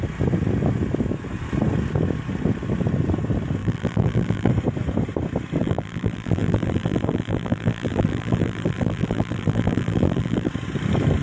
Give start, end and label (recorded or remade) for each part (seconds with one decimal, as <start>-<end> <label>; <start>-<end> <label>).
0.0-3.6 recorded; 3.6-4.5 remade; 4.5-5.6 recorded; 5.6-10.5 remade; 10.5-11.2 recorded